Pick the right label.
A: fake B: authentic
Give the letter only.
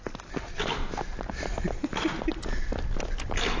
B